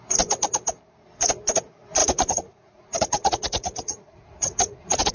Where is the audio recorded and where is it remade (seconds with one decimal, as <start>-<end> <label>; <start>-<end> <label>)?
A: 0.0-2.0 recorded; 2.0-5.1 remade